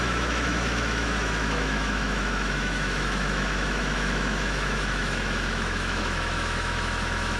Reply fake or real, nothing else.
fake